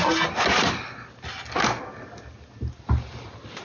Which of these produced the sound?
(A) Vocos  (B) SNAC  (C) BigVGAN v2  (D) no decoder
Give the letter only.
D